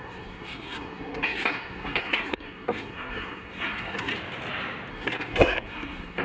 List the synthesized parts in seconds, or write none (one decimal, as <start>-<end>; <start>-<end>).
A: 0.0-4.1; 4.9-6.2